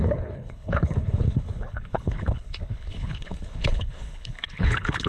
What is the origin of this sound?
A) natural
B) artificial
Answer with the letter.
B